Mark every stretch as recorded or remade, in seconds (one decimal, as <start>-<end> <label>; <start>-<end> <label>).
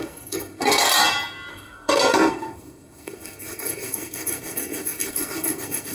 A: 0.0-0.9 remade; 0.9-1.5 recorded; 1.5-5.9 remade